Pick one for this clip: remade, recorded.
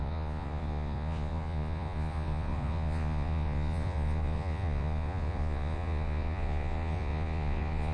remade